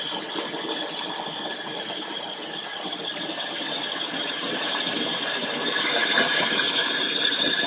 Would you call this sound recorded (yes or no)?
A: yes